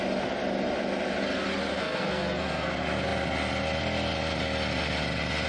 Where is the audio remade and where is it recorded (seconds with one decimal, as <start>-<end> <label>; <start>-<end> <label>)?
0.0-1.7 recorded; 1.7-2.7 remade; 2.7-5.5 recorded